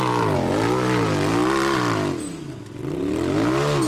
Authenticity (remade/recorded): recorded